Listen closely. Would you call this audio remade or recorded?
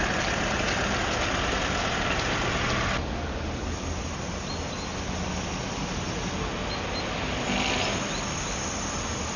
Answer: recorded